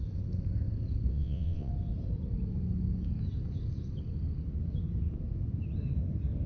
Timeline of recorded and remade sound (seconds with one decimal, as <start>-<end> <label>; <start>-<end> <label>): 0.0-1.1 recorded; 1.1-1.7 remade; 1.7-6.5 recorded